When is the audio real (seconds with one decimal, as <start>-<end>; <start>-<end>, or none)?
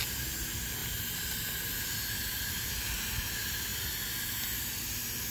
0.0-5.3